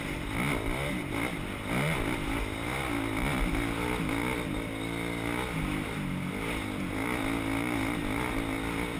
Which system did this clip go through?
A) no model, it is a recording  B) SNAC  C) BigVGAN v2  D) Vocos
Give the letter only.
A